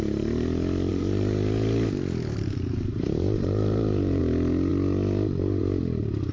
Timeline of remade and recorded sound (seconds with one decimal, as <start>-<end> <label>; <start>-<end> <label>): 0.0-0.9 recorded; 0.9-4.2 remade; 4.2-6.3 recorded